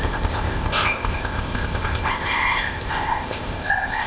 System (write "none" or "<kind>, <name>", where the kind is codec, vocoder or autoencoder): codec, ZipCodec